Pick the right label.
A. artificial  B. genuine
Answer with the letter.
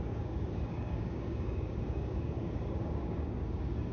A